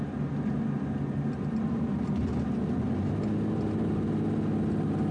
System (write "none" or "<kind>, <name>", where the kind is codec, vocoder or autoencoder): none